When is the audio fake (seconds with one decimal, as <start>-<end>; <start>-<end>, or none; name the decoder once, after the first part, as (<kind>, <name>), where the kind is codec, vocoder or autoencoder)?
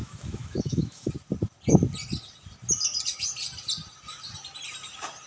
0.0-1.1 (autoencoder, DAC-VAE)